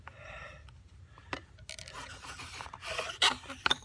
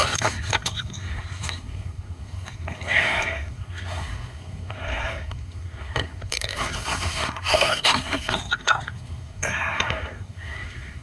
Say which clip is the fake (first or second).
second